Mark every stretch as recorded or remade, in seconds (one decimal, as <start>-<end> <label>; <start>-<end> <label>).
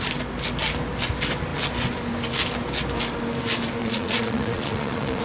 0.0-3.8 recorded; 3.8-5.2 remade